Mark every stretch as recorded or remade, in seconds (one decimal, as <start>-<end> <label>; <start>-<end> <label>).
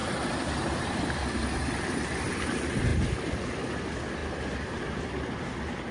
0.0-1.0 remade; 1.0-4.2 recorded; 4.2-5.1 remade; 5.1-5.9 recorded